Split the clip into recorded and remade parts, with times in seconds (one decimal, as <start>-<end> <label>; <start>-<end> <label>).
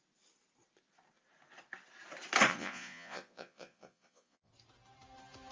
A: 0.0-2.5 recorded; 2.5-4.5 remade; 4.5-5.5 recorded